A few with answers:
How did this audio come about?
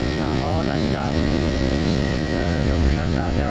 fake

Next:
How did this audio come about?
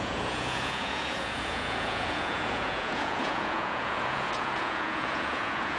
fake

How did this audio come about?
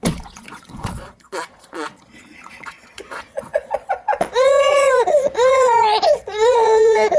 fake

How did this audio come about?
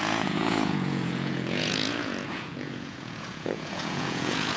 fake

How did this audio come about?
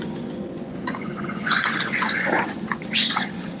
fake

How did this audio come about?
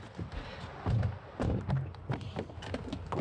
real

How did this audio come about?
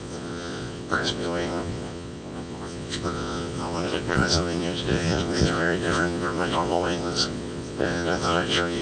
fake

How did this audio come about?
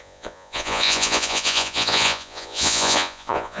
fake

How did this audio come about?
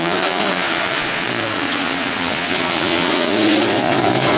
fake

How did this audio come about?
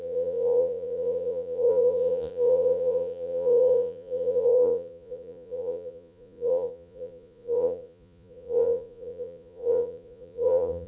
fake